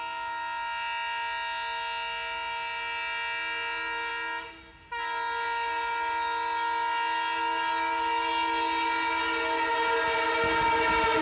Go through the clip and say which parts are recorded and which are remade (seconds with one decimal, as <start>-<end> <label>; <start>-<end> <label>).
0.0-11.2 recorded